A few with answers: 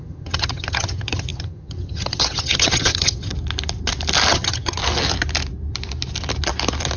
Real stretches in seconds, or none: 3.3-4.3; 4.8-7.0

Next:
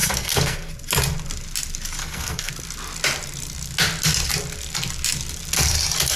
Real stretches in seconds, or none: 0.7-2.0; 2.5-6.2

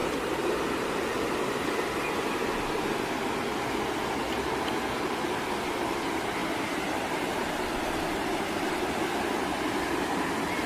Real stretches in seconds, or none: 2.1-10.7